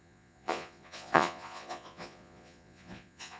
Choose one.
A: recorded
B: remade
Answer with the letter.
B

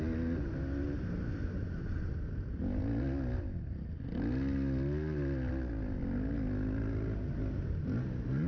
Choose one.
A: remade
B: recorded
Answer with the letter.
B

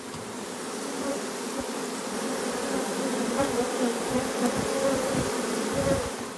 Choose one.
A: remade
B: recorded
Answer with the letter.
B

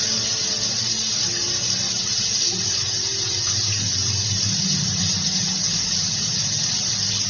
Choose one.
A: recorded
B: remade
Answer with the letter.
A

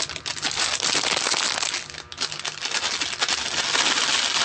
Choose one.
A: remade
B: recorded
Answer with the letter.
B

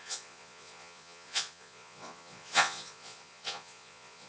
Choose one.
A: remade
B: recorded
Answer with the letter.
A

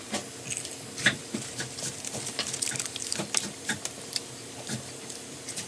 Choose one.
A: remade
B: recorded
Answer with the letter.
B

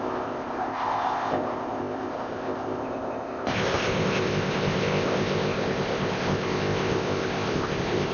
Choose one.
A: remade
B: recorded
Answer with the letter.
A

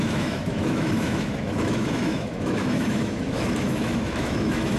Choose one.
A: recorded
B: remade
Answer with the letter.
B